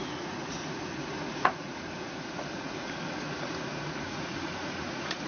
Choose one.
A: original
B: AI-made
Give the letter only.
B